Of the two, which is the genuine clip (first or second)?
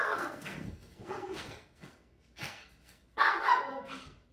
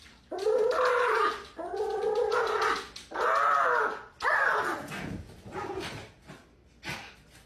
second